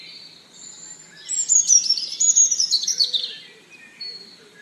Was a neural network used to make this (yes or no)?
yes